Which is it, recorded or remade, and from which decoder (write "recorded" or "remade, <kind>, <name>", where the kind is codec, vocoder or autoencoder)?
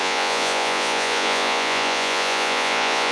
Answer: remade, vocoder, Vocos